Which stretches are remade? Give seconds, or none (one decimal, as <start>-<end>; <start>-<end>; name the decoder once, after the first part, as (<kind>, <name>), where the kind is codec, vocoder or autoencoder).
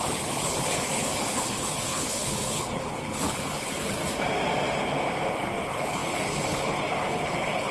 0.0-4.0 (codec, HILCodec); 5.3-7.7